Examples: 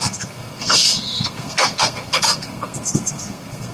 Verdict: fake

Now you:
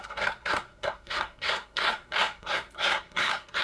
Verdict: fake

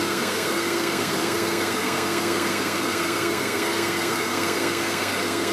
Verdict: fake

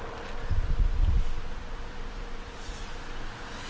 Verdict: real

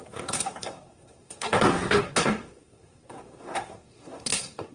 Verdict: fake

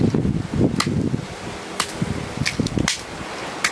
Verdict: real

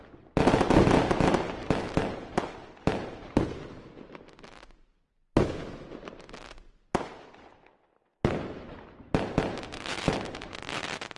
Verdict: real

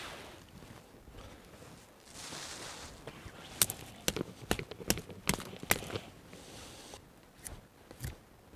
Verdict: real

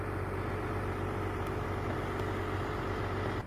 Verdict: real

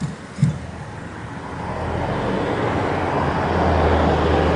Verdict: real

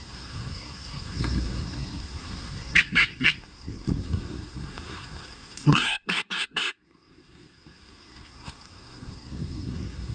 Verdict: fake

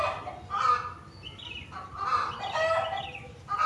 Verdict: real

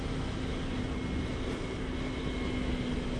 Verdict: real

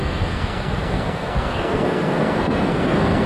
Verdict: fake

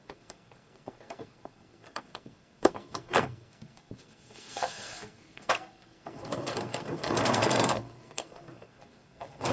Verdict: fake